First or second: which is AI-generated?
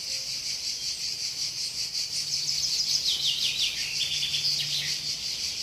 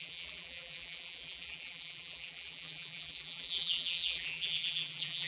second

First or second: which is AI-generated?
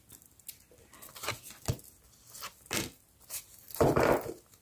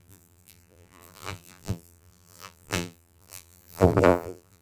second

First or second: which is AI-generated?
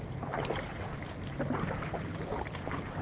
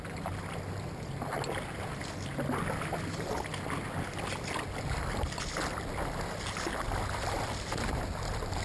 first